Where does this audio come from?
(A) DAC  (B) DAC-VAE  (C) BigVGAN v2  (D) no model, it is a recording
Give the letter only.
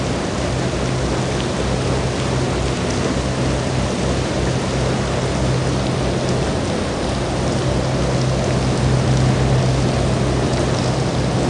D